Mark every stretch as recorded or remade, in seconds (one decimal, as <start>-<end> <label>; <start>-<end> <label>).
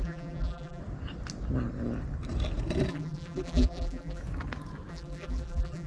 0.0-0.8 remade; 0.8-2.9 recorded; 2.9-4.2 remade; 4.2-4.9 recorded; 4.9-5.9 remade